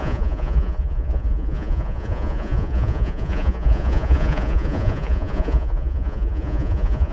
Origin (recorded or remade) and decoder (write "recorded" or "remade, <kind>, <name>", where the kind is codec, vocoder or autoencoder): remade, vocoder, Vocos